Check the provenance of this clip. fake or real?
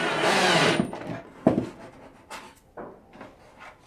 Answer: real